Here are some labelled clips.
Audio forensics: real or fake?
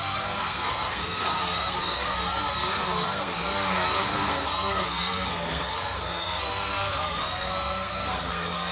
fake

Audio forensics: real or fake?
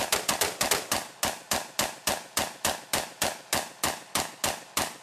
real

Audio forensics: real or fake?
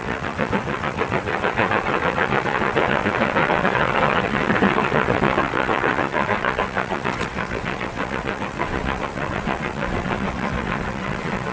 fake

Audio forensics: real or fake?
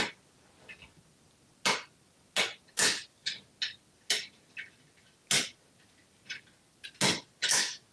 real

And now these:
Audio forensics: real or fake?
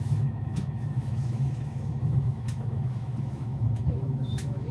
fake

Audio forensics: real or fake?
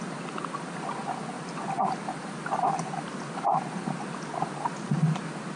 real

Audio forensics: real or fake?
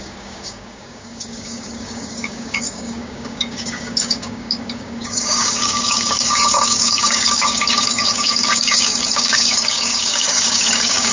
fake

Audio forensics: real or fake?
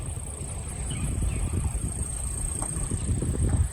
fake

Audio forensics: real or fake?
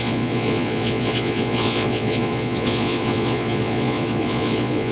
fake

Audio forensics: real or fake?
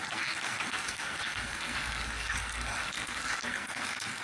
fake